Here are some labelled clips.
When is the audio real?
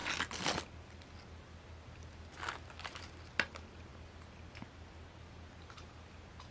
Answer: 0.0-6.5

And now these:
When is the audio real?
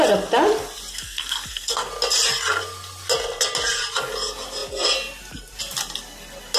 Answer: 0.0-0.9; 1.9-6.6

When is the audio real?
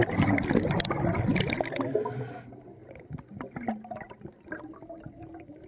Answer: 0.0-5.7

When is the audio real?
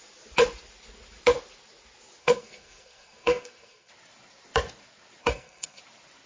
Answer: 0.0-2.2; 3.9-5.2; 5.8-6.3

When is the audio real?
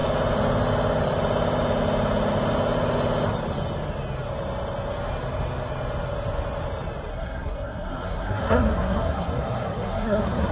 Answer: 0.0-7.1